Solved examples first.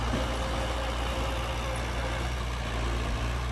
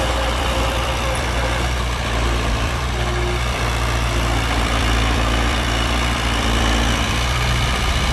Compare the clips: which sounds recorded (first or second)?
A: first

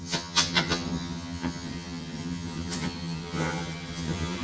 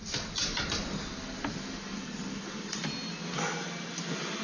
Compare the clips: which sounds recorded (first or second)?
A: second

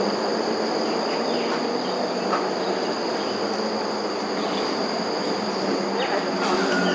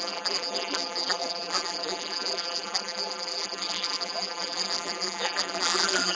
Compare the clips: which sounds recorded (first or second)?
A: first